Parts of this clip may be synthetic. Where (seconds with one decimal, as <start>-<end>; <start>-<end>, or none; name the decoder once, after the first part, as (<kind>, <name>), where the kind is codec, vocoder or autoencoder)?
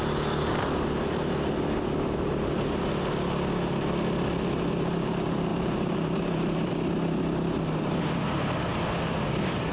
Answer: 5.5-6.7 (vocoder, BigVGAN v2)